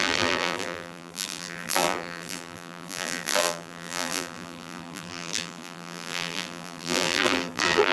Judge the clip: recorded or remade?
remade